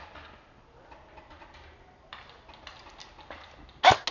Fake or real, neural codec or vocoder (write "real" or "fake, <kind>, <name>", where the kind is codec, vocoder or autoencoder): real